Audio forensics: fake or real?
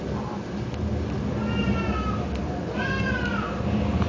real